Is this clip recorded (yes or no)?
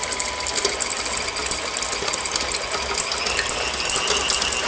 yes